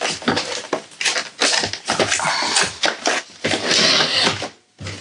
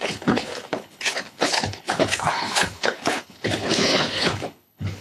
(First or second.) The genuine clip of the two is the first